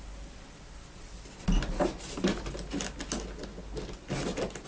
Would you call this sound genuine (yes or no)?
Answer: yes